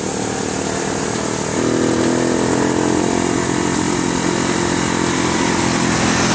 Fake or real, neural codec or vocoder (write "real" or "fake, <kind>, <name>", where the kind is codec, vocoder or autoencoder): real